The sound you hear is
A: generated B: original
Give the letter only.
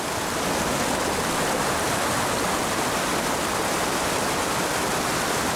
B